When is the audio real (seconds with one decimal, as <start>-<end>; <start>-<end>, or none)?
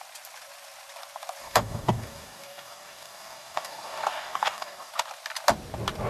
0.0-1.4; 4.9-6.1